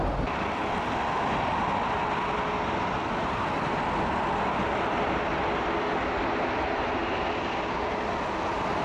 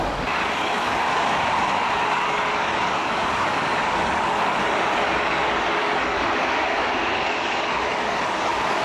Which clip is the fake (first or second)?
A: second